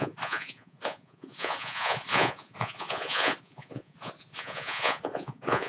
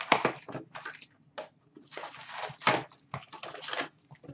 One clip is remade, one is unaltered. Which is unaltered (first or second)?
second